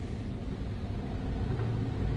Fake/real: real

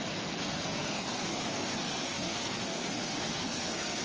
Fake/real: fake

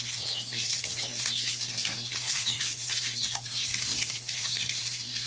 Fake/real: fake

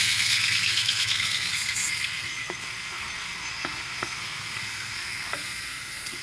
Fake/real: fake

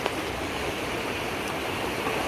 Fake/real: real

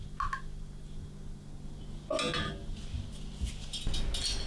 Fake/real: real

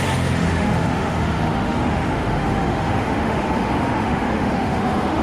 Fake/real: fake